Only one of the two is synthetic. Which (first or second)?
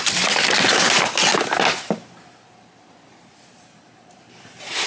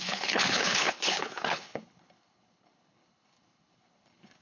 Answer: second